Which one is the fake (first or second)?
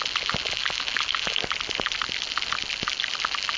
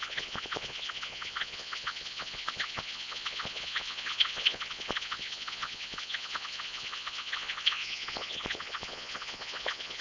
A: second